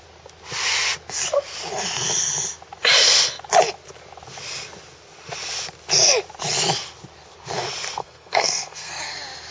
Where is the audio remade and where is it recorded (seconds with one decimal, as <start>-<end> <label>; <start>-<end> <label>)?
0.0-8.0 recorded; 8.0-9.0 remade; 9.0-9.5 recorded